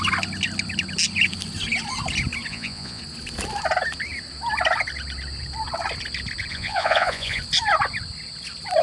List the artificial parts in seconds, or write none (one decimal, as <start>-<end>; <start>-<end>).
2.5-3.0; 6.5-7.4

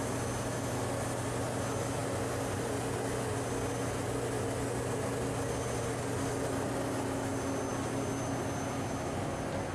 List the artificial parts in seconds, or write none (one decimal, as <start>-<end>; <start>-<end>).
none

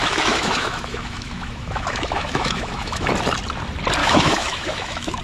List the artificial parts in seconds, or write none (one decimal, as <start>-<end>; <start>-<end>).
0.0-3.1; 4.0-5.2